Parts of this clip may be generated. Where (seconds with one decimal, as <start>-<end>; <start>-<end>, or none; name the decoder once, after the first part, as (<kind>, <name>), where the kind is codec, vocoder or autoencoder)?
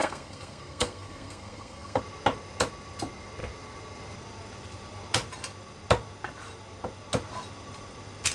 0.0-2.0 (codec, SNAC)